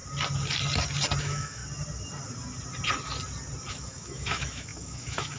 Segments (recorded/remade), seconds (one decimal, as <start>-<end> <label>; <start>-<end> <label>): 0.0-1.2 recorded; 1.2-1.6 remade; 1.6-3.7 recorded; 3.7-5.4 remade

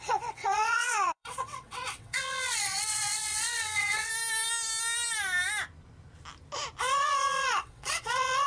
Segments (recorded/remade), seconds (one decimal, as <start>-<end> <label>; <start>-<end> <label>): 0.0-4.1 remade; 4.1-6.8 recorded; 6.8-8.5 remade